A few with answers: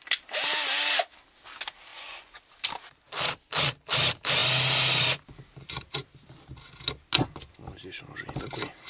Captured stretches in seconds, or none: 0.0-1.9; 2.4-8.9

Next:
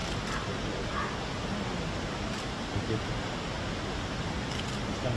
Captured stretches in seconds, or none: 0.0-5.2

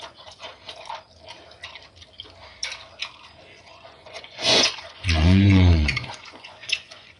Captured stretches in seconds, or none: 0.5-3.4

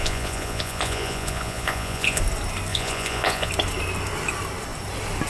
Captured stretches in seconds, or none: 2.2-2.7; 3.5-5.3

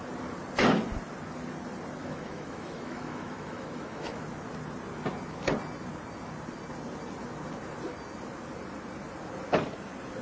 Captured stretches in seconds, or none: 0.0-2.0; 4.2-10.2

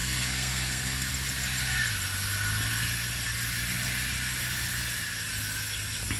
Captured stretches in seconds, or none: 1.1-6.2